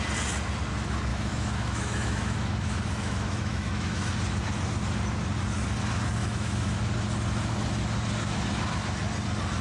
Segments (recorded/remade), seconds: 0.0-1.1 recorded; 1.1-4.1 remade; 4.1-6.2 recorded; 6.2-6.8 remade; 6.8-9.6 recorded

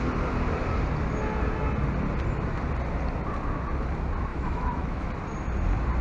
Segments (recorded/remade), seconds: 0.0-4.3 recorded; 4.3-5.1 remade; 5.1-6.0 recorded

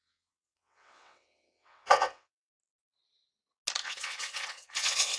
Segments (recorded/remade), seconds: 0.0-2.5 remade; 2.5-3.8 recorded; 3.8-5.2 remade